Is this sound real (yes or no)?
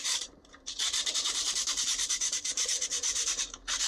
no